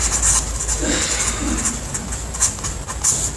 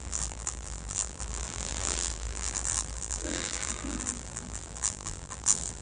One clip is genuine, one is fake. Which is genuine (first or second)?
first